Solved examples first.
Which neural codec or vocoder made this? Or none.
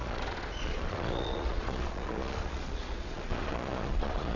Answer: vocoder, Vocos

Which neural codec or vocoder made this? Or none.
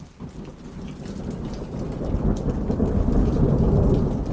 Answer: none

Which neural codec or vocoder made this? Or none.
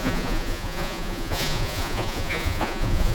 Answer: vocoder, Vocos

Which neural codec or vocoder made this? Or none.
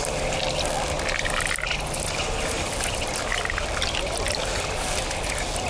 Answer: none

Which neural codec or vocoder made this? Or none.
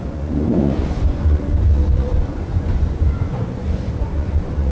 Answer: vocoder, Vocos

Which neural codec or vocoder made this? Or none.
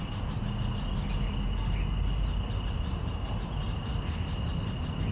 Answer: none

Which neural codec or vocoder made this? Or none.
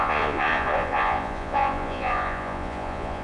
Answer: vocoder, Vocos